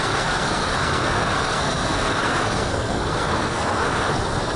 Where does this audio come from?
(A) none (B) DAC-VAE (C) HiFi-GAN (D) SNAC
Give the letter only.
D